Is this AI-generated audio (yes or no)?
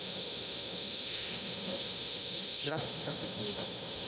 yes